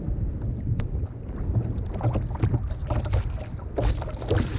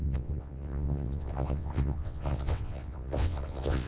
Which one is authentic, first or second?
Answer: first